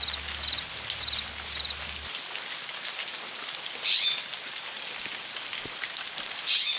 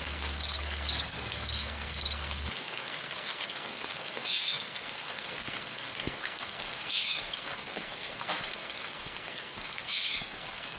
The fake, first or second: second